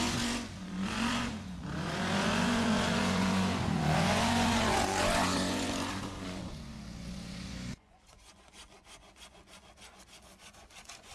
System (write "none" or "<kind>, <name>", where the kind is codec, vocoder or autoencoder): vocoder, Vocos